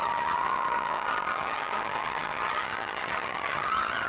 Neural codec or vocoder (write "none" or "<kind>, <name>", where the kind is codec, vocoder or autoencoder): vocoder, HiFi-GAN